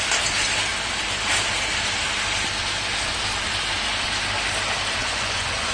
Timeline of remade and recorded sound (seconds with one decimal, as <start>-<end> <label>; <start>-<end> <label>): 0.0-5.0 recorded; 5.0-5.7 remade